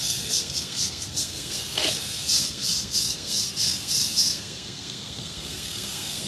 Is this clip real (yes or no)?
no